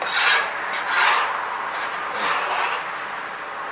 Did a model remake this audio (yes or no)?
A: no